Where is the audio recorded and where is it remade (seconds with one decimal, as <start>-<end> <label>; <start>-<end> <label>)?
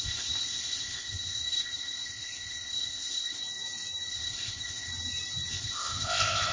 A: 0.0-3.4 remade; 3.4-4.1 recorded; 4.1-4.9 remade; 4.9-5.5 recorded; 5.5-6.5 remade